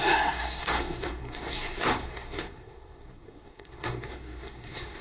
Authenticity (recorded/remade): remade